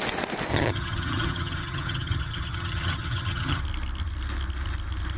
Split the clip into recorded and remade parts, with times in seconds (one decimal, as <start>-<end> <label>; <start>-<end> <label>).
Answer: 0.0-0.5 recorded; 0.5-3.6 remade; 3.6-5.2 recorded